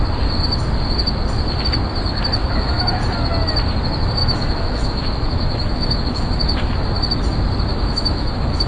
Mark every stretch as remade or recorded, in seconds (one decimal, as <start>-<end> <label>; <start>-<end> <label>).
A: 0.0-2.4 recorded; 2.4-2.9 remade; 2.9-4.2 recorded; 4.2-6.9 remade; 6.9-7.7 recorded; 7.7-8.7 remade